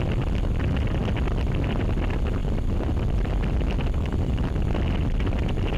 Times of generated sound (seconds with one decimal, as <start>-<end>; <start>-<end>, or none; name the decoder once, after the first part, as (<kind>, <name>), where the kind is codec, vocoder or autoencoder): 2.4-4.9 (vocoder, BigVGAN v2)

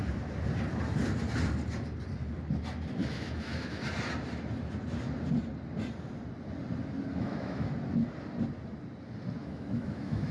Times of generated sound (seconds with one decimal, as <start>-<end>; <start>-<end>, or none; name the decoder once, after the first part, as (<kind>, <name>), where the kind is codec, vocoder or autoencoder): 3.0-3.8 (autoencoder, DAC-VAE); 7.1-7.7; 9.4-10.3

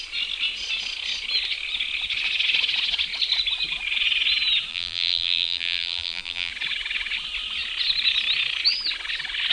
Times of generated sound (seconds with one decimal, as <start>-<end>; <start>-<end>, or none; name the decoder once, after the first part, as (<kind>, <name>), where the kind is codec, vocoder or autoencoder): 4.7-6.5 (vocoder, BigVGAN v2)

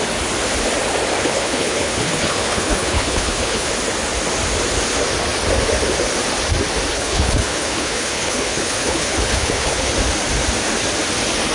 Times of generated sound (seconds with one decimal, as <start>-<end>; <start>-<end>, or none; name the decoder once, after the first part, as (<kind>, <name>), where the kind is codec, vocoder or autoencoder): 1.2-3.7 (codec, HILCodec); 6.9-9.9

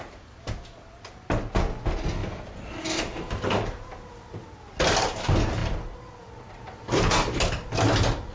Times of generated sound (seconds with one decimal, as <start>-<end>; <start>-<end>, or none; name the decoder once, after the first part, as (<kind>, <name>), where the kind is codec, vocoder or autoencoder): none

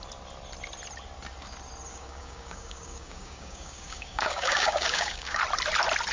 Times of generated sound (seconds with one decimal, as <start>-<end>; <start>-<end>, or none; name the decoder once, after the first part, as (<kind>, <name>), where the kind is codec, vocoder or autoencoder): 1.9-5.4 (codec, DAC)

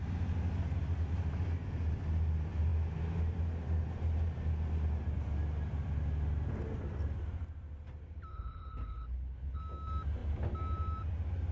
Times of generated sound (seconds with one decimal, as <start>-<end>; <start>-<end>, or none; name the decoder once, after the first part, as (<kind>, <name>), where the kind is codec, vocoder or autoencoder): 8.3-9.6 (codec, HILCodec)